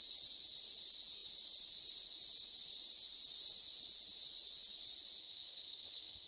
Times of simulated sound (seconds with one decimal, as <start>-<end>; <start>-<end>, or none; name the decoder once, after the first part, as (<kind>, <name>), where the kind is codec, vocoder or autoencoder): 5.2-6.3 (codec, DAC)